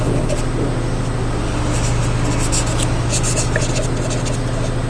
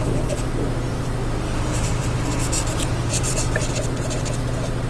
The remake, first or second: second